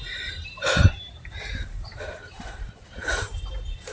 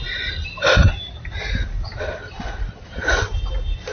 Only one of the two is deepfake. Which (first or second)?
first